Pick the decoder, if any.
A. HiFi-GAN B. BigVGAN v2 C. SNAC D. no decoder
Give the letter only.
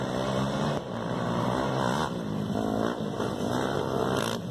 D